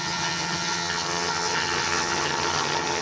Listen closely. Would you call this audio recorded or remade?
remade